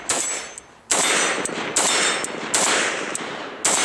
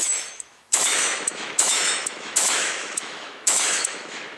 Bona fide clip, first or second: first